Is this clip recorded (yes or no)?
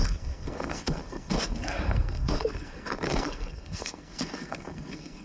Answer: no